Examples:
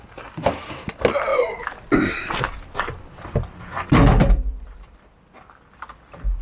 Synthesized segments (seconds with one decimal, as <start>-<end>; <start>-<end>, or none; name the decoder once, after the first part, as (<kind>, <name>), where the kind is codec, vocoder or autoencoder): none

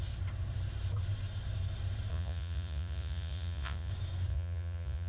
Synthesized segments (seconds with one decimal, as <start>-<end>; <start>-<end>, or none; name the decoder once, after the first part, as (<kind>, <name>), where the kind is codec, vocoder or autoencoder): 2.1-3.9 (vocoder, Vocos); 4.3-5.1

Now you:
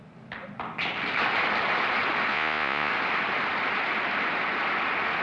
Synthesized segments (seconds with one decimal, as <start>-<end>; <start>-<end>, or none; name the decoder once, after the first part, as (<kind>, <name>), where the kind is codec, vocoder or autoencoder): 2.3-2.9 (vocoder, Vocos)

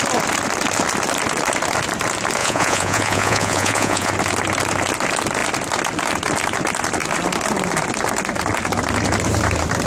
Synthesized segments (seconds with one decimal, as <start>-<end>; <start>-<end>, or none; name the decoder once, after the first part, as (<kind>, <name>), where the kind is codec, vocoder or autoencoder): 2.4-4.1 (vocoder, Vocos)